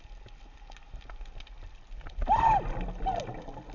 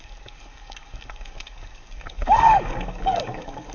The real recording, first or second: first